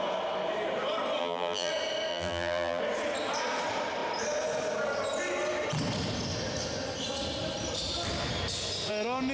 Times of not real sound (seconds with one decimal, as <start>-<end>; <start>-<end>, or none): 1.2-1.7; 2.1-2.8